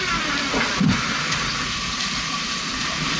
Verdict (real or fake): real